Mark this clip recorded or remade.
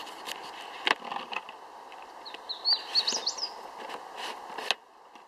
recorded